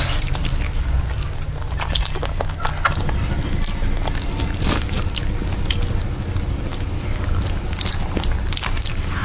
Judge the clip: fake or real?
real